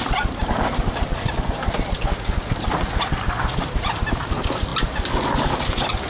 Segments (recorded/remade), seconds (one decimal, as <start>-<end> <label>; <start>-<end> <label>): 0.0-6.1 recorded